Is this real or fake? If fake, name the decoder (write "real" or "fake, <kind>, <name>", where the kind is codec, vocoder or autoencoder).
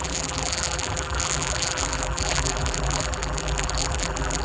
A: fake, vocoder, BigVGAN v2